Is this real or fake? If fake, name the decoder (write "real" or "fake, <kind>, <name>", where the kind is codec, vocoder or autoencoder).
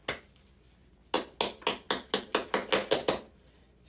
real